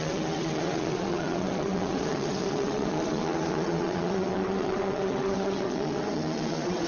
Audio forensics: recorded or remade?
remade